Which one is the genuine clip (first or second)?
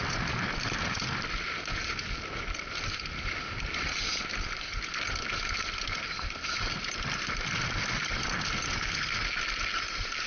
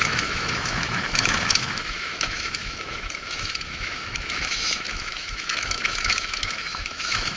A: first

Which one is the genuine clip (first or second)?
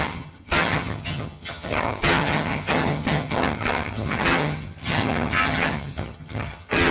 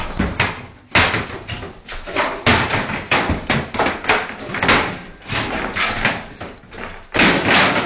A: second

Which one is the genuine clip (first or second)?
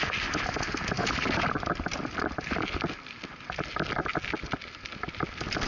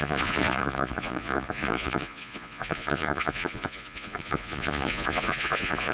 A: first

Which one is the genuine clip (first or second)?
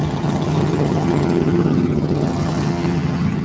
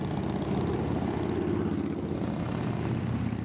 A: second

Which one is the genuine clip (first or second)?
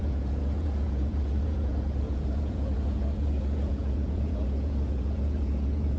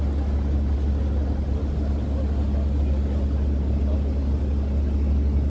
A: second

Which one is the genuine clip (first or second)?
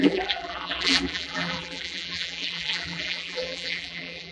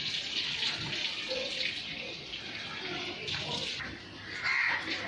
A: second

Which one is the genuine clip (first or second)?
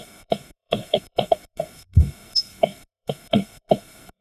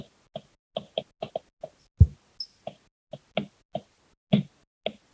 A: second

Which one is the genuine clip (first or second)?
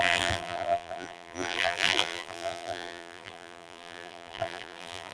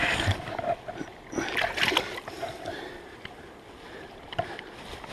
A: second